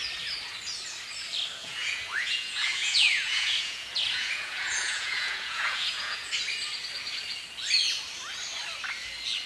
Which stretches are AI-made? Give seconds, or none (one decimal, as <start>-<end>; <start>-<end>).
1.6-6.3